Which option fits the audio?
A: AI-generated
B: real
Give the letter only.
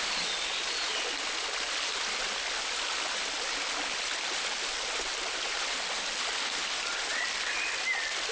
B